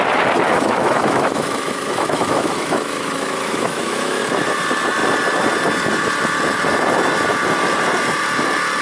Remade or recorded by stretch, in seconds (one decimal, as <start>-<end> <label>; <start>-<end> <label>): 0.0-0.5 recorded; 0.5-4.2 remade; 4.2-8.8 recorded